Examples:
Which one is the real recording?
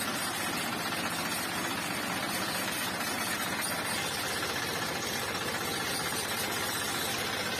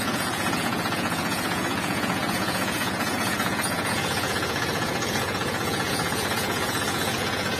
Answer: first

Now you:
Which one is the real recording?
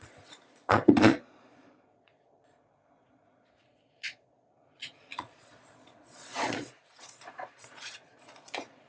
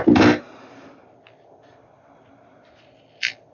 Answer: second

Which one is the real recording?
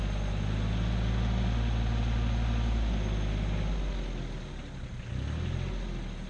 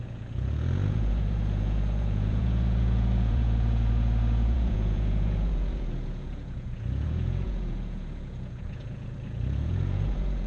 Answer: first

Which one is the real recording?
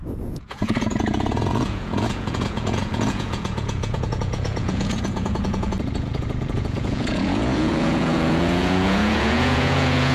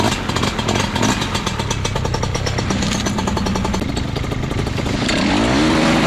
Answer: second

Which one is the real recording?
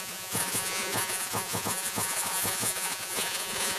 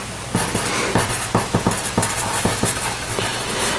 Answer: second